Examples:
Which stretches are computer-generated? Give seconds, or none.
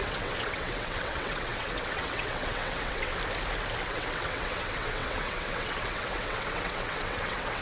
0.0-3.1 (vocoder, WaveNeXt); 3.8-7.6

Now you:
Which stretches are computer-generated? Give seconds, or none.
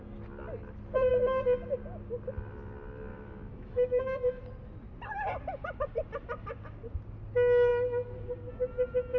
3.1-4.4 (autoencoder, DAC-VAE)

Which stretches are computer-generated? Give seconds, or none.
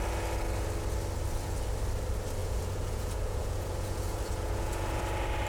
2.4-5.0 (vocoder, Vocos)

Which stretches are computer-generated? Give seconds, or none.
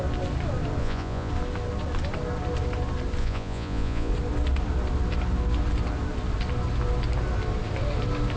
0.8-1.3 (vocoder, Vocos); 3.2-4.1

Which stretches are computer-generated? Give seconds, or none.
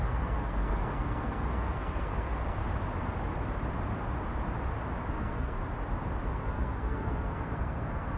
0.0-2.6 (codec, SNAC); 5.1-5.6; 6.3-8.2